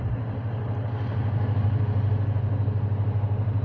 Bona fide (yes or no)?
yes